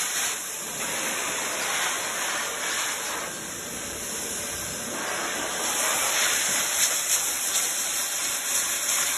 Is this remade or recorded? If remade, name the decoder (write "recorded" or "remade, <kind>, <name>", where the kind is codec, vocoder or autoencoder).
remade, vocoder, BigVGAN v2